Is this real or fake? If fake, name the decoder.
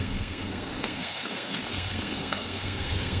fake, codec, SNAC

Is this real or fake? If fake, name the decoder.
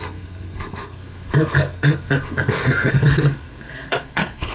fake, codec, SNAC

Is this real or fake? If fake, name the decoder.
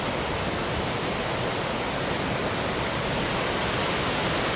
real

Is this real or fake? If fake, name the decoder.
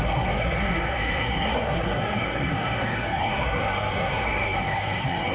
fake, codec, SNAC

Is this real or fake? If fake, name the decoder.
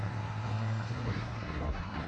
fake, codec, SNAC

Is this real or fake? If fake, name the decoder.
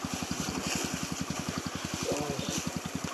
real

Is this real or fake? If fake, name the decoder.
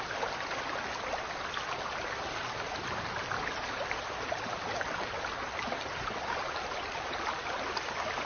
real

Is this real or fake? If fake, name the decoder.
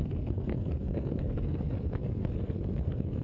fake, codec, SNAC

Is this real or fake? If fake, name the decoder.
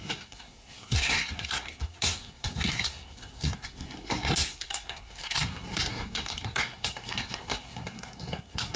fake, codec, SNAC